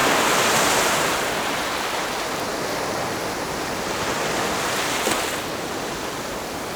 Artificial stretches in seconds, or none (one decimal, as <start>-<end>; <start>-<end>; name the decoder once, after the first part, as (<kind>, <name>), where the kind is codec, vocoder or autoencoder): none